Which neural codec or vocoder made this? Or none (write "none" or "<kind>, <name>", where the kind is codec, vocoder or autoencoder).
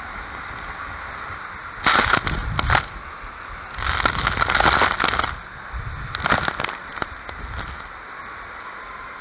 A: none